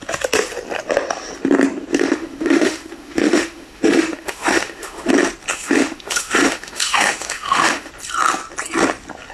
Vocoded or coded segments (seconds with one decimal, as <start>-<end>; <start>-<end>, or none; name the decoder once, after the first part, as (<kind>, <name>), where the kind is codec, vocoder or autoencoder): 1.9-5.1 (autoencoder, DAC-VAE); 5.5-7.9